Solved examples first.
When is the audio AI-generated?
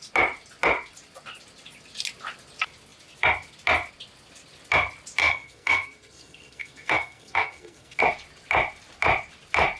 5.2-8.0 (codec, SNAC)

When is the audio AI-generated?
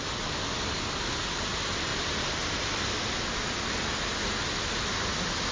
none